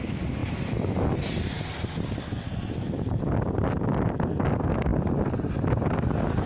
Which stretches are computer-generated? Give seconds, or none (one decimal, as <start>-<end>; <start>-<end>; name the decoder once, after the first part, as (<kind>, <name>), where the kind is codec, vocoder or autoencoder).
none